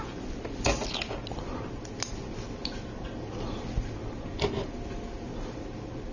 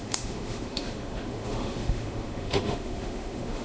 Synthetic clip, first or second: second